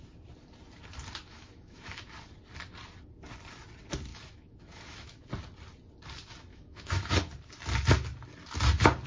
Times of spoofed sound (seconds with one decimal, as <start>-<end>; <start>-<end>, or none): 1.3-2.0; 4.1-5.3; 6.5-7.1